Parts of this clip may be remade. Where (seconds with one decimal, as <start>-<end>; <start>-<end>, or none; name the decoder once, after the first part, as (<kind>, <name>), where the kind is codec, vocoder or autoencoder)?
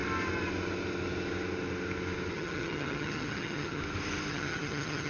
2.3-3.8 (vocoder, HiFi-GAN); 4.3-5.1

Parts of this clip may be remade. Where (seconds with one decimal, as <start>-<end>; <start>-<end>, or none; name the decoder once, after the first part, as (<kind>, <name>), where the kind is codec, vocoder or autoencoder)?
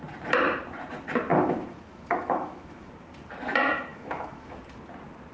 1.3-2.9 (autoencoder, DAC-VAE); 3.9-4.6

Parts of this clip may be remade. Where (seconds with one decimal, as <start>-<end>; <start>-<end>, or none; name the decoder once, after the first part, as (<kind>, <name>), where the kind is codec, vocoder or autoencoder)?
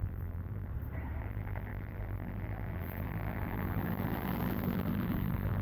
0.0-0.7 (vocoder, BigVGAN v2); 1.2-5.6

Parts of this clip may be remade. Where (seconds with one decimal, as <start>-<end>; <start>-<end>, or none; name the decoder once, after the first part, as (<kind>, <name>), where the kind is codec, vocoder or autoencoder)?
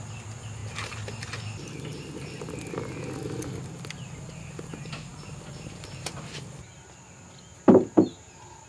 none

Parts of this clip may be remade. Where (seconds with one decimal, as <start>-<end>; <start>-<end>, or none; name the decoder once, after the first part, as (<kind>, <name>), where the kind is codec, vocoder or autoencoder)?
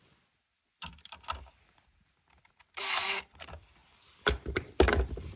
0.0-3.8 (vocoder, BigVGAN v2); 4.5-5.4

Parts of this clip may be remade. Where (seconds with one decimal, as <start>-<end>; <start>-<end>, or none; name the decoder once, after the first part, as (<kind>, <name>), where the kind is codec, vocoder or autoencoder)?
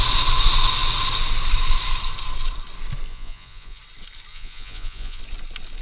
3.1-3.8 (vocoder, Vocos); 4.3-5.2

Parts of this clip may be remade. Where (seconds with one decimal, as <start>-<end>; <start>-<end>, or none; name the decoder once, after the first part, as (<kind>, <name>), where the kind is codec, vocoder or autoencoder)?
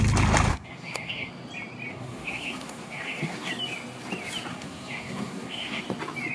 0.5-1.3 (codec, SNAC); 1.9-3.5; 4.5-5.8